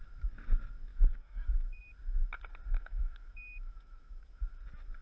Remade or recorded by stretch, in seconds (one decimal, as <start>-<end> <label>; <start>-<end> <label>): 0.0-0.9 recorded; 0.9-1.8 remade; 1.8-2.7 recorded; 2.7-4.4 remade; 4.4-5.0 recorded